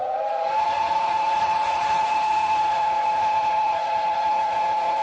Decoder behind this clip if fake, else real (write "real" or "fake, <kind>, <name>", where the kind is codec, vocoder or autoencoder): fake, vocoder, Vocos